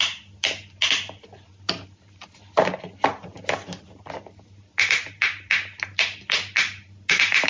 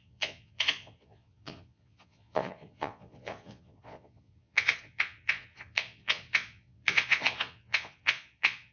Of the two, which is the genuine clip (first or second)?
first